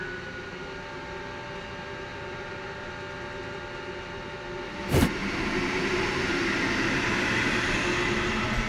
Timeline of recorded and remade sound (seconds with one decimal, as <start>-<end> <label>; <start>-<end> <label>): 0.0-2.1 recorded; 2.1-2.9 remade; 2.9-5.2 recorded; 5.2-6.4 remade; 6.4-8.7 recorded